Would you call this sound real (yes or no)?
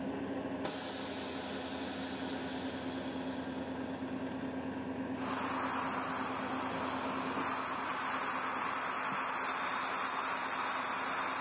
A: yes